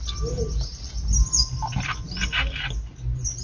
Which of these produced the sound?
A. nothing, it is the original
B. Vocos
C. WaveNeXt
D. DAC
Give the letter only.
A